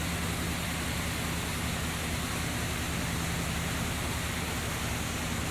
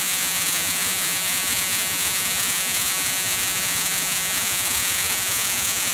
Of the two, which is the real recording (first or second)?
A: first